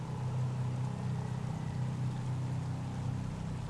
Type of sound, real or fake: real